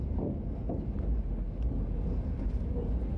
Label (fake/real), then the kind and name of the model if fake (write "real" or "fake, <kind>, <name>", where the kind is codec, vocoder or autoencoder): real